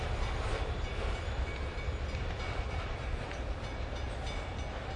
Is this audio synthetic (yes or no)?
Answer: yes